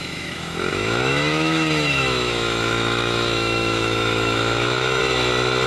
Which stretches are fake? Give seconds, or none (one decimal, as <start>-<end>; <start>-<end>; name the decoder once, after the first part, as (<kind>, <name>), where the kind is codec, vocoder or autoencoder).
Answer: 0.0-5.0 (autoencoder, DAC-VAE)